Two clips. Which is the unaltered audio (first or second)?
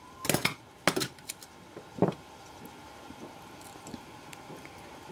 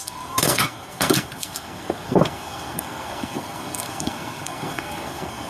first